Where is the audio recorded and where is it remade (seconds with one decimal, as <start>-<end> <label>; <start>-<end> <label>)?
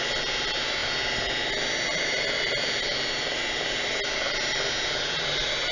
0.0-5.7 recorded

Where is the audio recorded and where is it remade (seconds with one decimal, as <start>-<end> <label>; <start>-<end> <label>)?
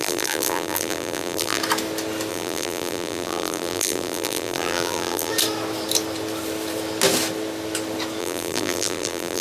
0.0-1.6 remade; 1.6-2.3 recorded; 2.3-5.3 remade; 5.3-8.2 recorded; 8.2-9.4 remade